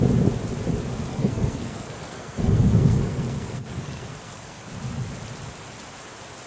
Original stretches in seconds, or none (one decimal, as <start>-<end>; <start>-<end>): 0.0-1.1; 4.7-6.5